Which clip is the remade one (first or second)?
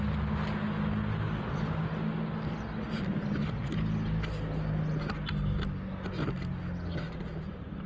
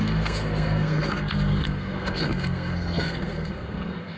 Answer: second